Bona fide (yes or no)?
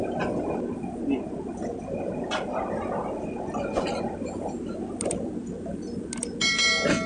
yes